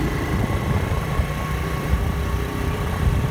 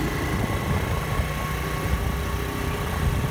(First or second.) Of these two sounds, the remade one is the first